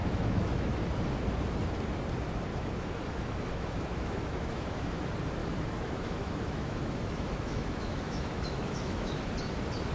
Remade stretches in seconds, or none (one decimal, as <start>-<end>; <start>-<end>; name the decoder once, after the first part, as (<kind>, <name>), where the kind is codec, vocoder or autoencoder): 0.0-0.7 (autoencoder, DAC-VAE); 2.5-5.0; 5.4-9.2